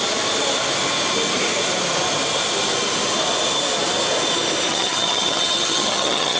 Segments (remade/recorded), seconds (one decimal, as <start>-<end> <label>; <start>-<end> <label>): 0.0-4.7 recorded; 4.7-6.4 remade